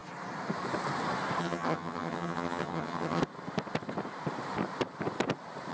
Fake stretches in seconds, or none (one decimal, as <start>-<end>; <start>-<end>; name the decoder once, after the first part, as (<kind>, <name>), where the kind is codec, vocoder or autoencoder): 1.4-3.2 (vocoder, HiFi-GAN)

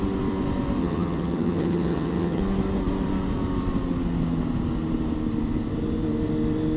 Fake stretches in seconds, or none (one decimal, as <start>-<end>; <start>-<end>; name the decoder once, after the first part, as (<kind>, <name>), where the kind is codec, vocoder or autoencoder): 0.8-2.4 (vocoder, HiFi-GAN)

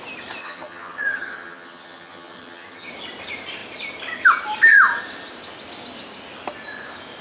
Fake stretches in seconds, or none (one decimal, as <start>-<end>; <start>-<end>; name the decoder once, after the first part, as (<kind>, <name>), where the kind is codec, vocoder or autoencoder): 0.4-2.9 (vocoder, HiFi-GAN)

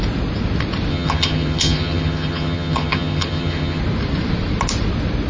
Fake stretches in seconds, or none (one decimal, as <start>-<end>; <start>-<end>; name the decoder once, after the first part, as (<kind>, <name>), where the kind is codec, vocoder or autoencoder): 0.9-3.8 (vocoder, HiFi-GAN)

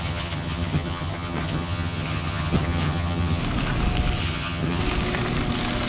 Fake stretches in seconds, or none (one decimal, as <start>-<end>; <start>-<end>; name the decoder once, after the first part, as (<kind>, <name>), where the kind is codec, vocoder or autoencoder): 0.0-3.4 (vocoder, HiFi-GAN); 4.2-4.8

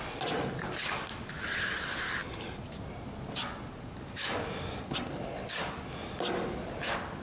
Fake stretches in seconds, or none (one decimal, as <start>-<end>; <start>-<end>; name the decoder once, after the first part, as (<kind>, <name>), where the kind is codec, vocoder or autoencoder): none